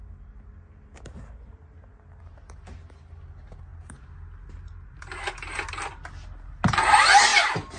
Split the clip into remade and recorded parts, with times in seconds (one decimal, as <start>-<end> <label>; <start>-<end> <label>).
0.0-7.8 recorded